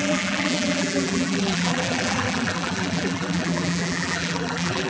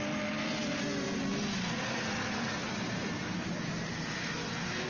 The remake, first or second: first